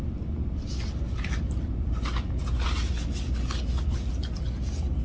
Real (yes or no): yes